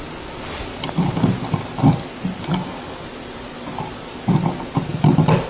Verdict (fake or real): real